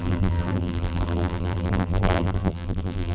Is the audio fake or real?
fake